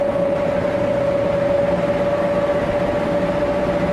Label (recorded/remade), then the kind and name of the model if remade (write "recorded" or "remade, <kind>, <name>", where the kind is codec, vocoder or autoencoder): recorded